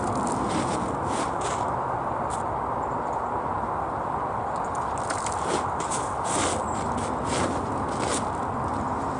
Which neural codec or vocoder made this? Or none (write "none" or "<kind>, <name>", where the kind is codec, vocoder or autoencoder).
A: none